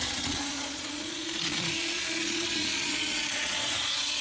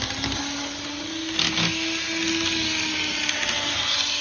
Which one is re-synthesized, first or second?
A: first